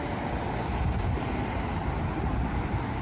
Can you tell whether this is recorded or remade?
recorded